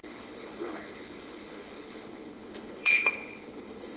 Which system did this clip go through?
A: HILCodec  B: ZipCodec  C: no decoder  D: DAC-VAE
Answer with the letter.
A